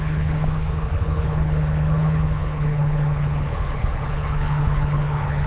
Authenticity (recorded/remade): remade